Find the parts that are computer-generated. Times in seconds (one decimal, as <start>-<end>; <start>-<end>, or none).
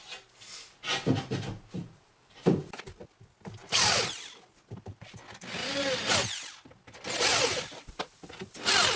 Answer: 1.8-2.6; 5.6-6.2; 7.3-8.3